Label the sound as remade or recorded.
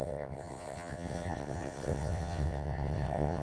remade